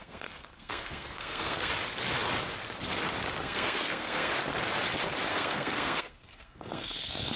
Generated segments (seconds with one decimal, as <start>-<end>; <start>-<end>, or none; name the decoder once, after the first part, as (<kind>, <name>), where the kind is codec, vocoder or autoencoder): 0.0-1.7 (codec, SNAC); 3.4-4.3; 5.3-7.4